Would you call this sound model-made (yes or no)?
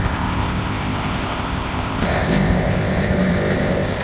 yes